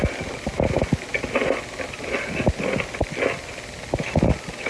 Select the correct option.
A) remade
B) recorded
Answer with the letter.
B